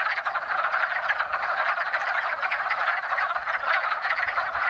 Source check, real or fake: real